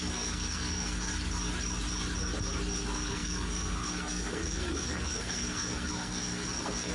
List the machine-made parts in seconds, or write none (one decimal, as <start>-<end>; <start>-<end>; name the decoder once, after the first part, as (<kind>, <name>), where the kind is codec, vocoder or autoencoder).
0.0-1.1 (codec, SNAC); 2.8-6.9